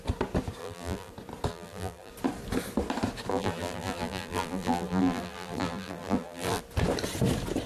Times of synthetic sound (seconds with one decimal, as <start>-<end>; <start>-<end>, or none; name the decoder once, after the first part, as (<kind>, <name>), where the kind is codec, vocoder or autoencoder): 0.6-1.1 (vocoder, BigVGAN v2); 1.5-2.1; 3.3-6.6